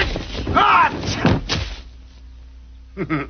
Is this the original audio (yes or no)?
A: yes